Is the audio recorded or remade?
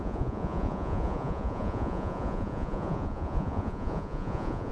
remade